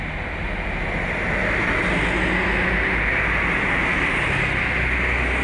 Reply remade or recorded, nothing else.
recorded